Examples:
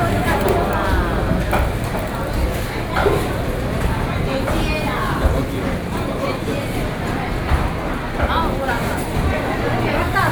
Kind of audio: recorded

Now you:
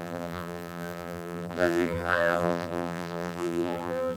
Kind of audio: remade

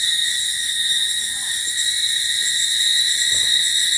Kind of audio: recorded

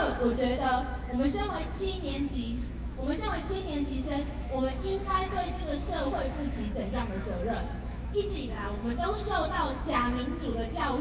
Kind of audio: remade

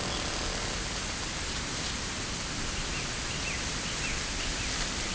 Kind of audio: recorded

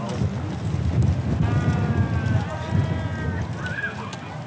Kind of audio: recorded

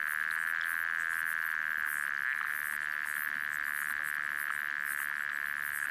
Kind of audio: recorded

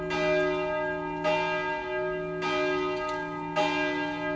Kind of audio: recorded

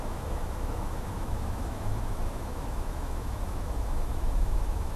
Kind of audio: remade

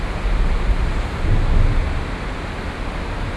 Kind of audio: recorded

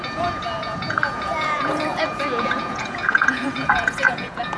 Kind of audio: remade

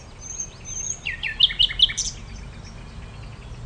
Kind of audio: recorded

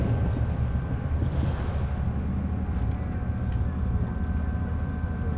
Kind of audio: recorded